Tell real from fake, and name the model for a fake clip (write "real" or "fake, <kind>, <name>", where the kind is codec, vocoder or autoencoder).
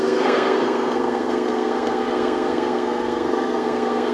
fake, codec, SNAC